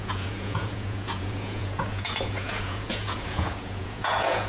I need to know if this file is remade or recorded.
remade